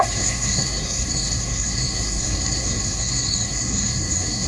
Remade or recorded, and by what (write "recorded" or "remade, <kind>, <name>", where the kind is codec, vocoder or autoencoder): remade, codec, SNAC